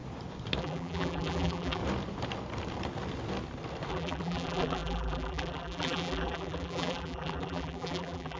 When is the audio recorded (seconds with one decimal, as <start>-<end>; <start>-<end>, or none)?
0.0-0.6; 1.8-3.9